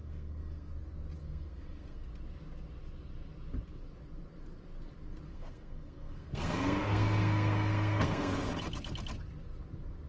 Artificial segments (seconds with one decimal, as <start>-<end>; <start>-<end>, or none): 0.0-0.7; 1.2-2.1; 5.3-8.5